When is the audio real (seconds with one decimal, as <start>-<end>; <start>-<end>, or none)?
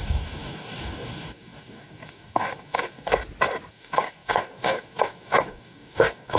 3.1-3.7